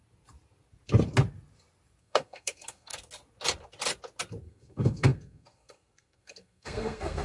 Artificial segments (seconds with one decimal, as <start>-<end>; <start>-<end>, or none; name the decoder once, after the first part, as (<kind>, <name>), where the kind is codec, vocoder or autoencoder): 2.0-2.9 (codec, SNAC); 4.4-7.2